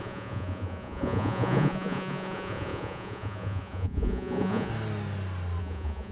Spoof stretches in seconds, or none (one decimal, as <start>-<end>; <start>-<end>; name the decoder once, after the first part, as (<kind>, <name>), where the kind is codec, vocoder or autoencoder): 0.0-4.7 (vocoder, Vocos); 5.6-6.1